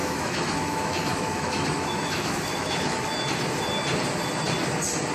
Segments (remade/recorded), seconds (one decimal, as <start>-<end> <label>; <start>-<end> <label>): 0.0-3.1 remade; 3.1-5.1 recorded